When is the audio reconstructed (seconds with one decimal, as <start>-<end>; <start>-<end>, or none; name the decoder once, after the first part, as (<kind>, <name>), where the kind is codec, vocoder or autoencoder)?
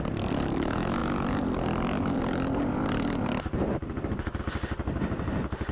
none